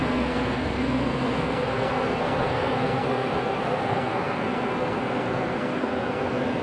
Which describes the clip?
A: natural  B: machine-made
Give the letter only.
B